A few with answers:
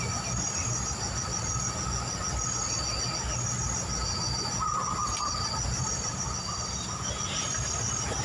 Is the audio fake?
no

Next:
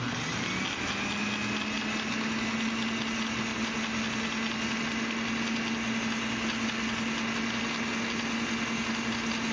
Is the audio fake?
no